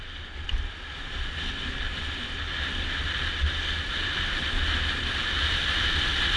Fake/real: real